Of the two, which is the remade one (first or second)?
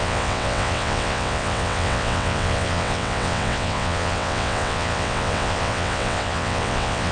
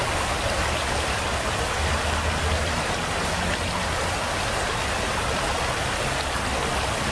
first